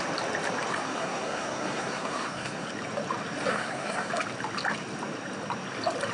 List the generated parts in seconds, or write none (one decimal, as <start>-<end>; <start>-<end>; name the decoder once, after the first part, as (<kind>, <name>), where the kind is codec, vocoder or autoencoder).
0.7-2.7 (codec, SNAC); 3.5-4.1